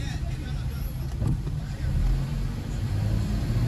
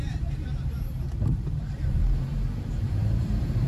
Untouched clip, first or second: first